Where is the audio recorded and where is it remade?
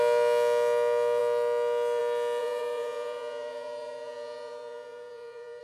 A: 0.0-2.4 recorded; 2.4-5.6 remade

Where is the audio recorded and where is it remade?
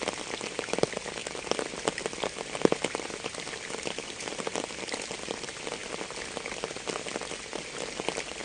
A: 0.0-8.4 recorded